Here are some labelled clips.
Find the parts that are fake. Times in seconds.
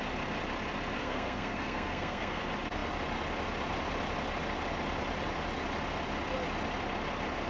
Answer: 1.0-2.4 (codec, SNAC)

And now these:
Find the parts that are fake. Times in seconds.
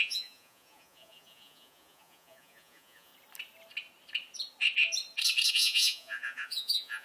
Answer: 0.0-3.1 (vocoder, Vocos); 5.5-7.0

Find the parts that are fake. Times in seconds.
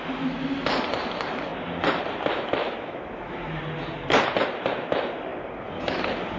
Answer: 2.6-3.6 (autoencoder, DAC-VAE)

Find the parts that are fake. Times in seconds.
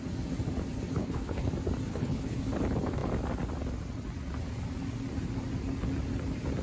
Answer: 1.0-1.5 (codec, HILCodec); 1.9-2.4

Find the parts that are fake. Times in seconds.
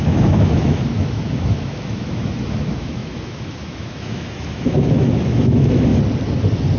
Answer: 0.0-5.9 (autoencoder, DAC-VAE)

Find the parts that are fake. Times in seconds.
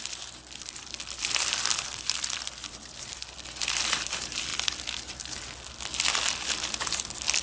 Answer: 0.0-4.5 (vocoder, BigVGAN v2); 6.8-7.4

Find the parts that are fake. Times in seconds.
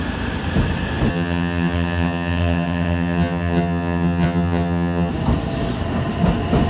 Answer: 1.1-5.1 (vocoder, HiFi-GAN)